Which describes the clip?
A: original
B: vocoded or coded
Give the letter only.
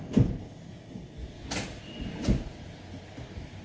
A